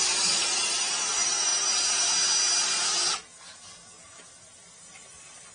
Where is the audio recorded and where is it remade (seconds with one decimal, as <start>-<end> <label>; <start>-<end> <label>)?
0.0-1.5 remade; 1.5-4.8 recorded; 4.8-5.5 remade